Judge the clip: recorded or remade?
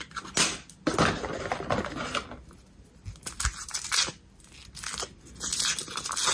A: recorded